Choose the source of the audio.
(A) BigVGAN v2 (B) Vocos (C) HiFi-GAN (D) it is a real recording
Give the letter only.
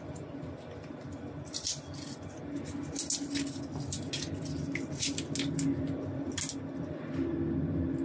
D